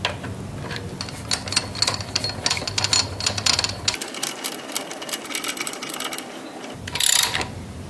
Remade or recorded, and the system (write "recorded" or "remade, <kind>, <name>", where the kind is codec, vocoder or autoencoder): recorded